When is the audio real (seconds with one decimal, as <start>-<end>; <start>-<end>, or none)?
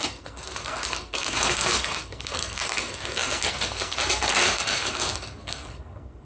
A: none